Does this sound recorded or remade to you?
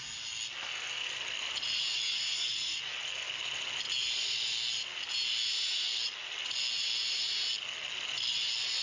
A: recorded